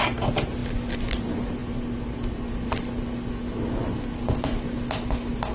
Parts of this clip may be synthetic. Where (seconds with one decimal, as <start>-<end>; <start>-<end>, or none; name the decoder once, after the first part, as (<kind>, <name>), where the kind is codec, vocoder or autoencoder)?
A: none